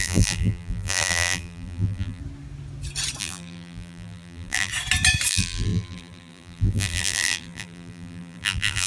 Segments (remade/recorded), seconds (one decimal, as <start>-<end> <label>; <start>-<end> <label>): 0.0-2.2 remade; 2.2-3.2 recorded; 3.2-4.7 remade; 4.7-5.3 recorded; 5.3-8.9 remade